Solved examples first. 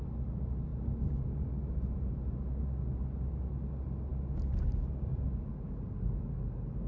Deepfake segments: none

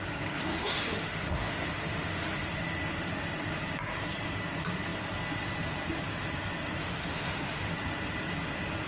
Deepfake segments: 0.5-2.3 (autoencoder, DAC-VAE); 6.8-7.7

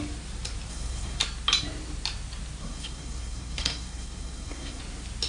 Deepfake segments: 0.7-1.2 (codec, SNAC); 2.6-4.8